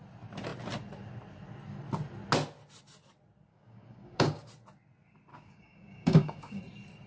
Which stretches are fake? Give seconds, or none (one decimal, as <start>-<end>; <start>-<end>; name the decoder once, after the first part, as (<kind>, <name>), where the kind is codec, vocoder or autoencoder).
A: 3.5-4.5 (codec, DAC); 5.3-6.6